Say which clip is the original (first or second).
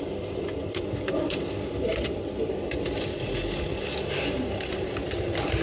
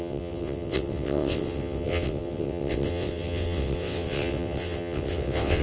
first